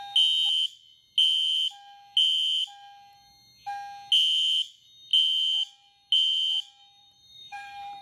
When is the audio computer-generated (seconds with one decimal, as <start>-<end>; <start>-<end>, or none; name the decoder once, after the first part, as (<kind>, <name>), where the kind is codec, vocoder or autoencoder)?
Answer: 7.0-8.0 (vocoder, BigVGAN v2)